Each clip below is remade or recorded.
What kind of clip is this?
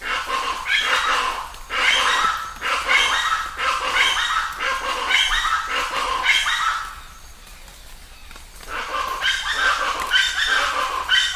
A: recorded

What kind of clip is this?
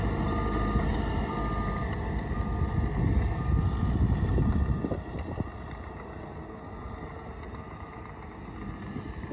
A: recorded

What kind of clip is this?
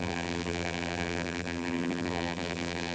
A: remade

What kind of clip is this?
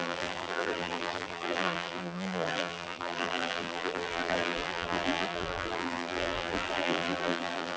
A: remade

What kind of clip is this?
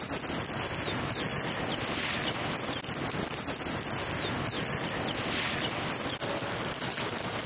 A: recorded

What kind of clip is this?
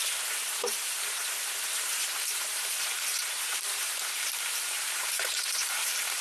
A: remade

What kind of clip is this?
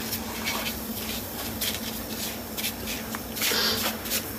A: recorded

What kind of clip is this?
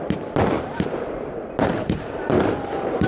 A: remade